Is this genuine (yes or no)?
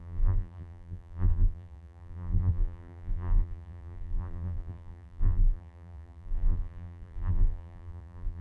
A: no